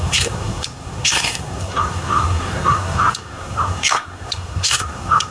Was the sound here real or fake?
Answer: fake